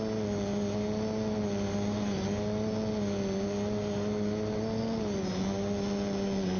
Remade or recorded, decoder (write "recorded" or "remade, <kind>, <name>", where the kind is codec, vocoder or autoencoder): recorded